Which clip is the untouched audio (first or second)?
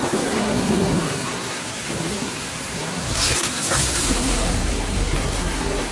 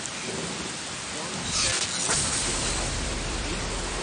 second